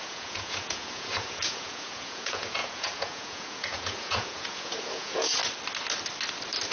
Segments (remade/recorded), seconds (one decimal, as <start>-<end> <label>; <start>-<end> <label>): 0.0-5.4 remade; 5.4-6.7 recorded